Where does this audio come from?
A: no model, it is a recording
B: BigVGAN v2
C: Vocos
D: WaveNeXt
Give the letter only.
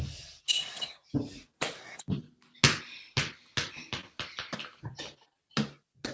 A